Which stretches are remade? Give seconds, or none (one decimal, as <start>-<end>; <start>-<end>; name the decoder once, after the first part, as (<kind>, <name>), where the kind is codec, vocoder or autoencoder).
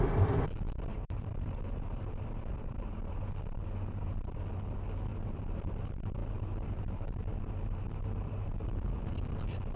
0.9-4.4 (vocoder, BigVGAN v2); 5.1-5.8; 6.2-9.1